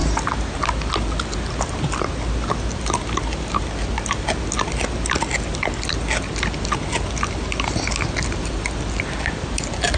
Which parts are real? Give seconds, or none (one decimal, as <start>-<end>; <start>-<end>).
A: 0.0-10.0